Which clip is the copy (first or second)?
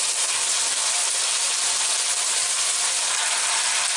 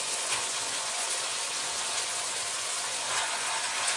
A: second